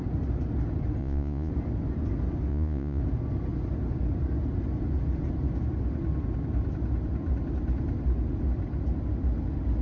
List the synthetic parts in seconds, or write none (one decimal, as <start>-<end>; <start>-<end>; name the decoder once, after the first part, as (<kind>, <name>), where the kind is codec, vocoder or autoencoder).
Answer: 1.0-1.5 (vocoder, Vocos); 2.5-3.0